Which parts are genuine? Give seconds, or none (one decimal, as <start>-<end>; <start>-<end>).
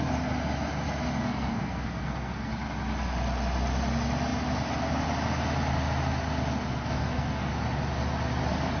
0.0-1.2; 2.5-6.7; 7.5-8.8